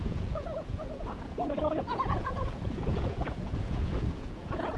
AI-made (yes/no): yes